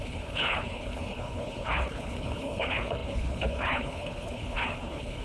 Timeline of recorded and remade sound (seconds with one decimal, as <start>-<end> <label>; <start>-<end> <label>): 0.0-5.2 remade